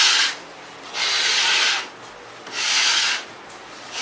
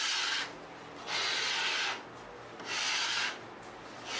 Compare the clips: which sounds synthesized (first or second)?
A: first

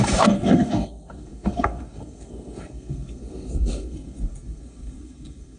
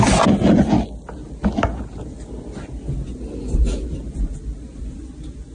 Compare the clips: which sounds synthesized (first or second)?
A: first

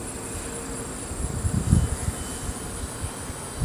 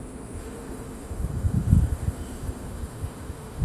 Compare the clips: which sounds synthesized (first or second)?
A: second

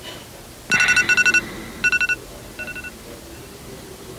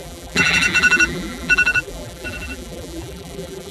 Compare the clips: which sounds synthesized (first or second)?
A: second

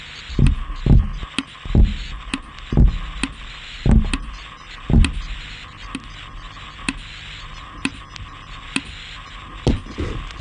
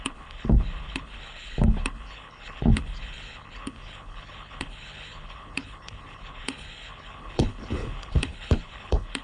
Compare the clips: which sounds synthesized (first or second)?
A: second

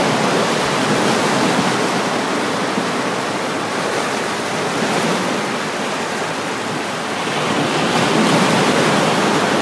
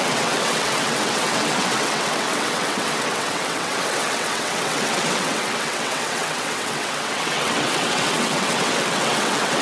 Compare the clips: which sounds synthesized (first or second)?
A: second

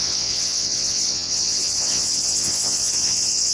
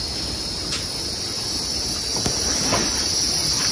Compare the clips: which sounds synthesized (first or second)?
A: first